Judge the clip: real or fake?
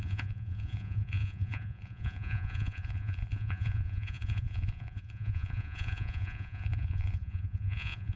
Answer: fake